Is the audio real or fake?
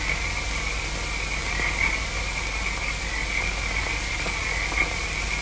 real